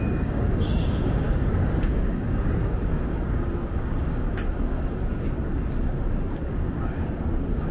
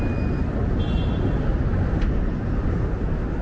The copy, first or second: first